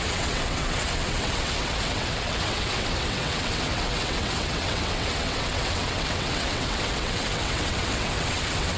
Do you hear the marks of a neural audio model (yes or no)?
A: yes